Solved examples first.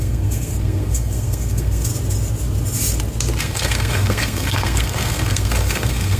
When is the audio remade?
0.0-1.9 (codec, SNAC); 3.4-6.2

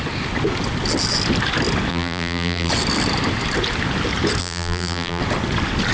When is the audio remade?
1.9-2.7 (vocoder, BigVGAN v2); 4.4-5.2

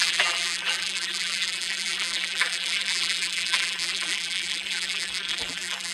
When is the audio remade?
0.0-5.9 (vocoder, BigVGAN v2)

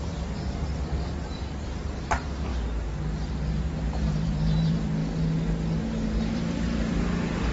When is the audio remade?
0.0-2.5 (vocoder, BigVGAN v2); 3.3-5.0; 6.3-7.5